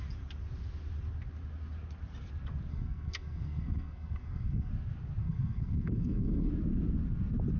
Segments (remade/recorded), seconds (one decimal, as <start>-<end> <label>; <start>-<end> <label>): 0.0-2.7 recorded; 2.7-4.7 remade; 4.7-5.2 recorded; 5.2-6.5 remade; 6.5-7.6 recorded